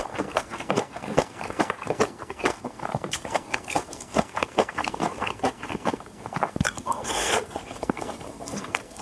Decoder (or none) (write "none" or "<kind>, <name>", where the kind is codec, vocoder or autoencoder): codec, SNAC